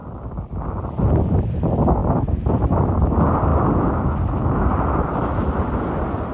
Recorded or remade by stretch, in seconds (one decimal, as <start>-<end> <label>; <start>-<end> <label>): 0.0-6.3 recorded